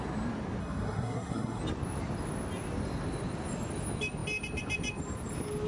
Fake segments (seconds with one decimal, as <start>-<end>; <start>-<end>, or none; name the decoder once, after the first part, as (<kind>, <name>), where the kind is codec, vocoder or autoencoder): 0.6-1.6 (codec, SNAC)